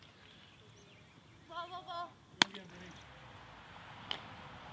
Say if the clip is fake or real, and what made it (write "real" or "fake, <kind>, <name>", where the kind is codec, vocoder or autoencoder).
real